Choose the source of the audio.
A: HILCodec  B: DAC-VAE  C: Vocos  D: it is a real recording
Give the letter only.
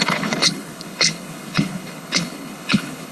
A